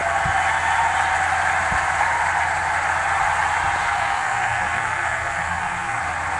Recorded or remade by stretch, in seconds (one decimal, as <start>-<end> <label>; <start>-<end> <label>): 0.0-3.8 recorded; 3.8-6.0 remade; 6.0-6.4 recorded